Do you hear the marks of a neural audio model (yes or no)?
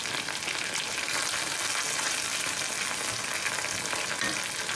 no